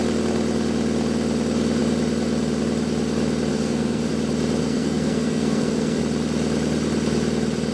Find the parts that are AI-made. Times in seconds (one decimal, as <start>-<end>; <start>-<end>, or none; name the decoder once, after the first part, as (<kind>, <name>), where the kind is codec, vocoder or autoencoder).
3.5-4.1 (codec, SNAC); 4.6-6.0

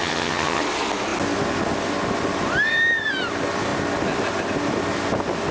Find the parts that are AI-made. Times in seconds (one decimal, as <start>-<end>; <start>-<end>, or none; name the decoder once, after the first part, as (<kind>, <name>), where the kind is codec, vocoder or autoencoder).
0.0-0.6 (vocoder, HiFi-GAN)

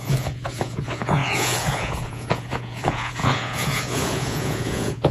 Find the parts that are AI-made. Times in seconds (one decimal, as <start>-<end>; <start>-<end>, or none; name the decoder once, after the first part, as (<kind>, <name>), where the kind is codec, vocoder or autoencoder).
0.0-5.1 (vocoder, Vocos)

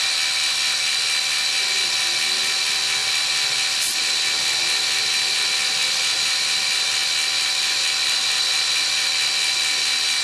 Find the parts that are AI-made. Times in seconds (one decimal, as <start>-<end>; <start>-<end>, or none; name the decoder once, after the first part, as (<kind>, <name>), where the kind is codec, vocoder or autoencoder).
none

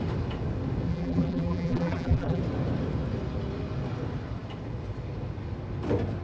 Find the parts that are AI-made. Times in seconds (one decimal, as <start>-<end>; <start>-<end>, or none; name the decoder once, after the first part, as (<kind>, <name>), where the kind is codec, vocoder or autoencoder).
0.9-2.4 (vocoder, BigVGAN v2)

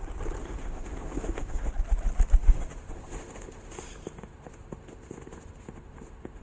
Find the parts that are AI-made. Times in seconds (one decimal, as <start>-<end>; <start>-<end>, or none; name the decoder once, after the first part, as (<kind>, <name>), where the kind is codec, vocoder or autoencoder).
0.4-1.7 (autoencoder, DAC-VAE); 2.4-6.4

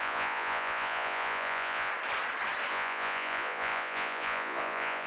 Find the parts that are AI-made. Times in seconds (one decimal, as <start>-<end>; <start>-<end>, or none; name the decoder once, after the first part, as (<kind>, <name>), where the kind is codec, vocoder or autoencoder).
0.0-1.9 (vocoder, Vocos); 2.7-5.1